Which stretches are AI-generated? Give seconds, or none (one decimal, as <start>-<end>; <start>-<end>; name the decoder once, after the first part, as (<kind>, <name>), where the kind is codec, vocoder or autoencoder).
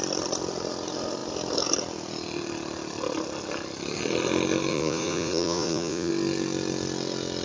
4.7-6.1 (vocoder, Vocos)